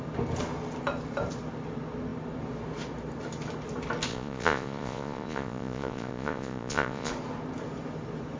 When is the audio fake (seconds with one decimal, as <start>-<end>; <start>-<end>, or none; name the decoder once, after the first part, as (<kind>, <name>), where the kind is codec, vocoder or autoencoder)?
4.1-7.1 (vocoder, Vocos)

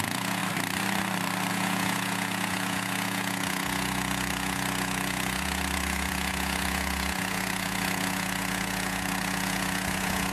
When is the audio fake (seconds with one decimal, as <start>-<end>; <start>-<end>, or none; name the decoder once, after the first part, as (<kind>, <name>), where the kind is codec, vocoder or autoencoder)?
0.0-0.4 (vocoder, Vocos); 1.5-10.3

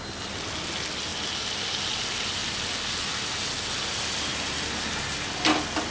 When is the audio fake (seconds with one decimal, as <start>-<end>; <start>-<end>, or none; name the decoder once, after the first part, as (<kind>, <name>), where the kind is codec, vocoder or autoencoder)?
none